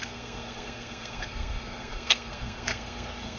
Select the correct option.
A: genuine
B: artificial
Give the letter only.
B